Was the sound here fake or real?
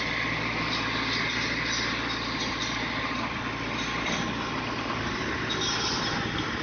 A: real